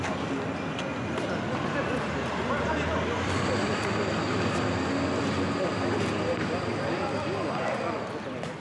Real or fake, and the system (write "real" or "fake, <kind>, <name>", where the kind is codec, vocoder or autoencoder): real